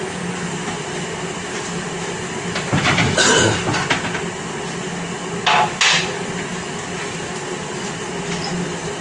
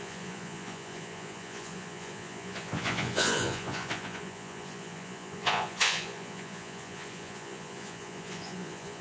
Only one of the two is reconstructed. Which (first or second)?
second